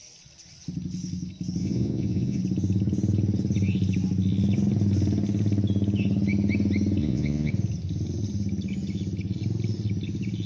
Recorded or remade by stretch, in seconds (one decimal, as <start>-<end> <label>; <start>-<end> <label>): 0.0-1.6 recorded; 1.6-2.4 remade; 2.4-7.0 recorded; 7.0-7.5 remade; 7.5-10.5 recorded